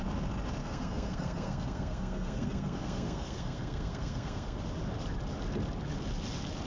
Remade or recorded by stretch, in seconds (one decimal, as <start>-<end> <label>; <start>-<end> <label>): 0.0-0.6 recorded; 0.6-4.6 remade; 4.6-6.7 recorded